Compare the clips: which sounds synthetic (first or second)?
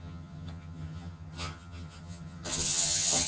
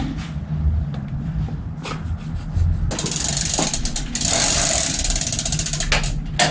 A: first